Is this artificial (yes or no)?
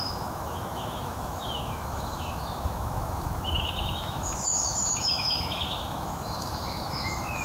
yes